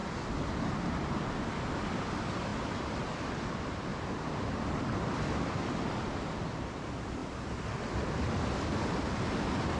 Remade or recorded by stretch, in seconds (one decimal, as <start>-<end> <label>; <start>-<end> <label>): 0.0-0.5 remade; 0.5-3.9 recorded; 3.9-5.3 remade; 5.3-7.2 recorded; 7.2-8.3 remade; 8.3-9.8 recorded